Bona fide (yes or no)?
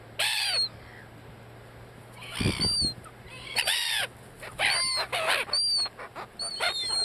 yes